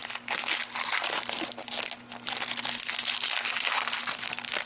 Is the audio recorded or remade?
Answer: recorded